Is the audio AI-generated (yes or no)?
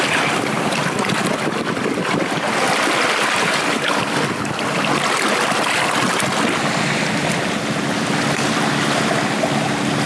no